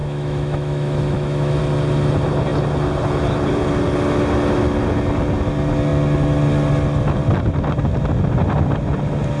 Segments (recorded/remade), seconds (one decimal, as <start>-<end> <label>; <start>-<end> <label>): 0.0-1.6 remade; 1.6-9.4 recorded